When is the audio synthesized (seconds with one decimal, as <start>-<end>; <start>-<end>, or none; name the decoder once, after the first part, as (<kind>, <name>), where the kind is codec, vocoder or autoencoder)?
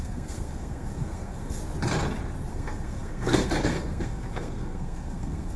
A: 0.0-1.6 (codec, SNAC); 2.5-5.6